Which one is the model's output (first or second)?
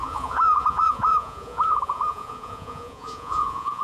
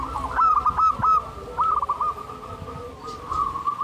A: first